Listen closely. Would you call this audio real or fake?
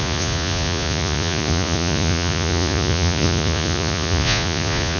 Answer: fake